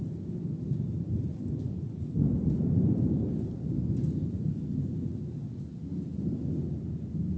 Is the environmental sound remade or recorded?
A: recorded